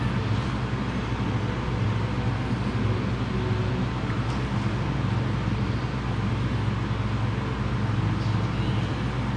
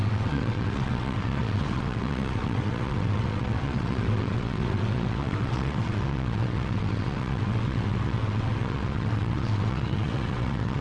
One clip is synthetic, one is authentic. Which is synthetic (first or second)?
second